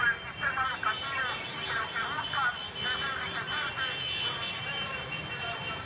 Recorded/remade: recorded